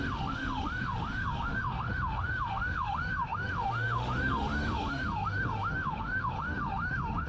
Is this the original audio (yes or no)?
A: no